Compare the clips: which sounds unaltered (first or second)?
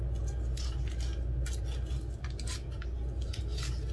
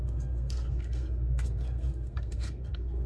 first